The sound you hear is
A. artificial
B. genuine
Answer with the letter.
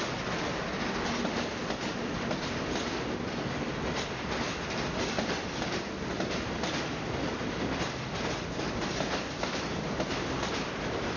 B